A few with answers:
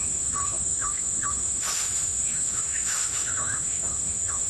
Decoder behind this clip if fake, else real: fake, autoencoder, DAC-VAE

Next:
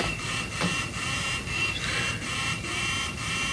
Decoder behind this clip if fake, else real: real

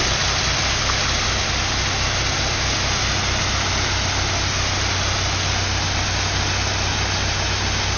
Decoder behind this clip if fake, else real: real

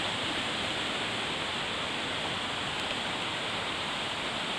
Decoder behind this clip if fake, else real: real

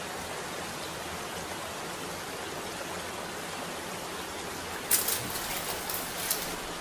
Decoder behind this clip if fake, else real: real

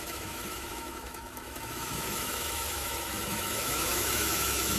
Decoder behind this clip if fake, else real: fake, autoencoder, DAC-VAE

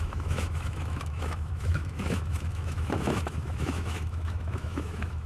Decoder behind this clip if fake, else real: fake, autoencoder, DAC-VAE